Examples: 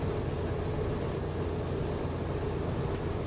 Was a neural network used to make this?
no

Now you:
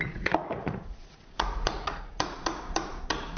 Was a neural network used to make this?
yes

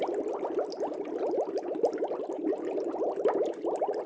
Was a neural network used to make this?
no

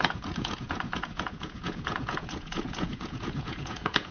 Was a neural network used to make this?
yes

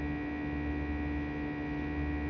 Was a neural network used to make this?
no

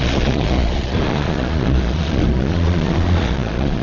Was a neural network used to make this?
yes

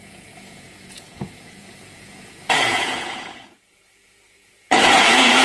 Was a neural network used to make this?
yes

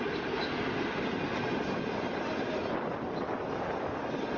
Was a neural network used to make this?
no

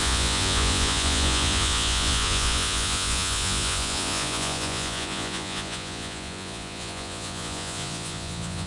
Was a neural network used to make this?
yes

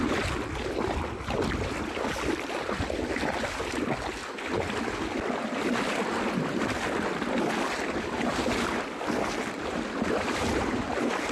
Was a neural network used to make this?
no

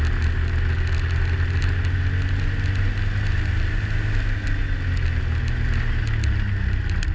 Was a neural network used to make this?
no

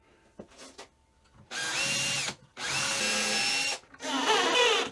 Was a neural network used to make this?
no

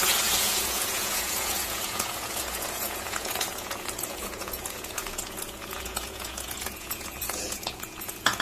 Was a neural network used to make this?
yes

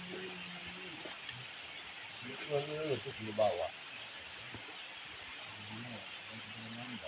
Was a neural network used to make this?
no